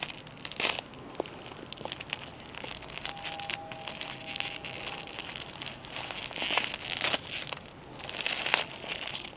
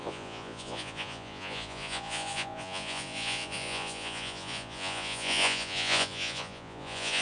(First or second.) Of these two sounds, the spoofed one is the second